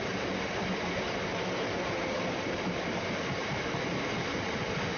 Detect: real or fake real